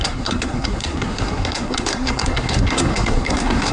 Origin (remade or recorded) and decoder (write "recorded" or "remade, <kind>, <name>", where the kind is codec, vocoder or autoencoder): remade, codec, SNAC